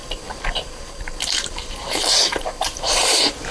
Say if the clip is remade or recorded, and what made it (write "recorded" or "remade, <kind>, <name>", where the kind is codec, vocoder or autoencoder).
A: remade, vocoder, BigVGAN v2